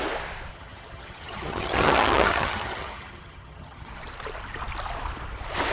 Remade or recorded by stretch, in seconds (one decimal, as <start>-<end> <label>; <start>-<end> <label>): 0.0-0.5 recorded; 0.5-3.9 remade; 3.9-5.7 recorded